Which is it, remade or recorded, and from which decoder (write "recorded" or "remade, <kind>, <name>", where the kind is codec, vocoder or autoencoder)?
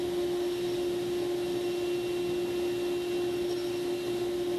recorded